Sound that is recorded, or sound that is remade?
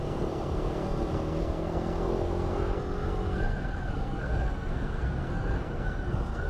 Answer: remade